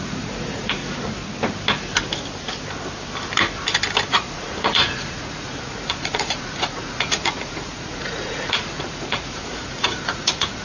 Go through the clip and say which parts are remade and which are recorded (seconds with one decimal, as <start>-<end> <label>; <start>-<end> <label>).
0.0-0.8 remade; 0.8-4.1 recorded; 4.1-10.6 remade